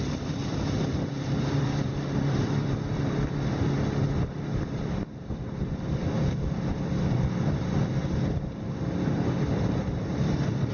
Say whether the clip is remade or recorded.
remade